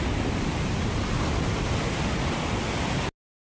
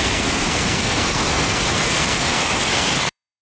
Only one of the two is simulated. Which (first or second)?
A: second